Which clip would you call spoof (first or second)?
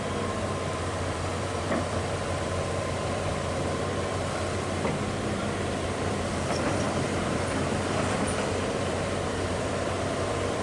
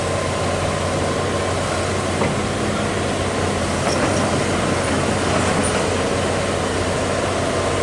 first